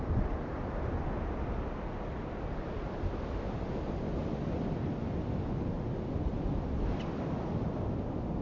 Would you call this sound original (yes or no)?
yes